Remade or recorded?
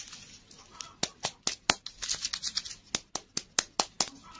recorded